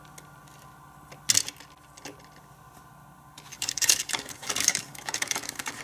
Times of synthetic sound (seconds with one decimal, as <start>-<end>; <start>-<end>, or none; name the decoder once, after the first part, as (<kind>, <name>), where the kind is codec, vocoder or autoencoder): 3.5-5.8 (codec, DAC)